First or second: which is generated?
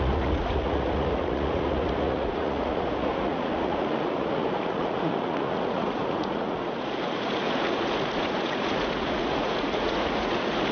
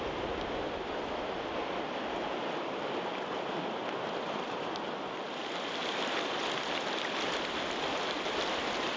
first